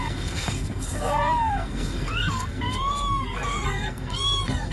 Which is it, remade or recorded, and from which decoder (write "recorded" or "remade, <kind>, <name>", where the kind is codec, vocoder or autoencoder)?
remade, codec, SNAC